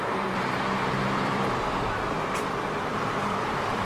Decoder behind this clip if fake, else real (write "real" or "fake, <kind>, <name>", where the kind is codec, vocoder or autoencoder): fake, vocoder, BigVGAN v2